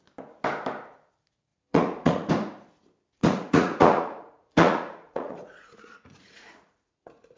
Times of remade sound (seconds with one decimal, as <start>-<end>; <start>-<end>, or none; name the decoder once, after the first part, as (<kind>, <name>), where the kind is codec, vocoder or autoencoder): 1.5-2.3 (vocoder, Vocos); 3.2-7.4